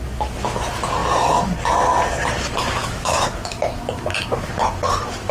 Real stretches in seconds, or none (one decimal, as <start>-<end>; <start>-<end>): 0.0-2.8; 4.5-5.3

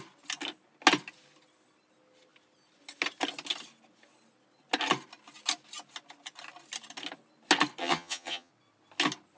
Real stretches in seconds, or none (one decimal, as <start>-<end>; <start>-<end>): 0.0-7.8; 8.5-9.4

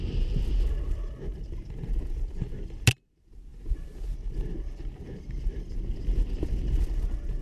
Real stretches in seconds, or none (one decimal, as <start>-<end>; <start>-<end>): 0.0-7.4